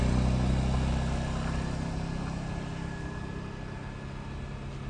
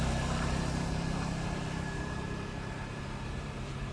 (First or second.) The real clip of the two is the first